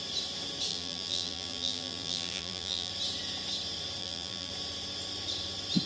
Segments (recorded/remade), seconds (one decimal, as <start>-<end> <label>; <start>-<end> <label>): 0.0-0.7 recorded; 0.7-2.9 remade; 2.9-4.0 recorded; 4.0-4.5 remade; 4.5-5.9 recorded